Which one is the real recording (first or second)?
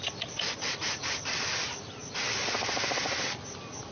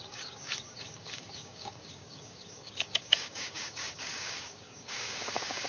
first